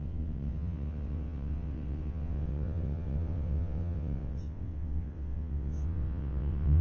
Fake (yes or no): yes